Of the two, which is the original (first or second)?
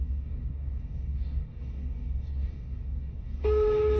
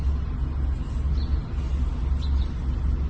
second